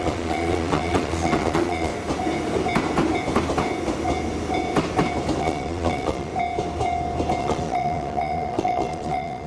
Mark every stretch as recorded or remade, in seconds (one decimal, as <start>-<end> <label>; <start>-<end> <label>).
0.0-1.9 remade; 1.9-5.4 recorded; 5.4-6.3 remade; 6.3-7.4 recorded; 7.4-9.5 remade